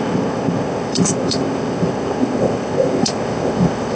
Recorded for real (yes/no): no